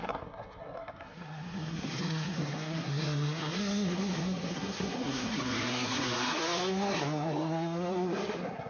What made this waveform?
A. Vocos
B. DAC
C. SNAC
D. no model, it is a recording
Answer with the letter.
C